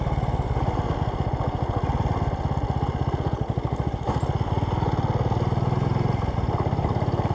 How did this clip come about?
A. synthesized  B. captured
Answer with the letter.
B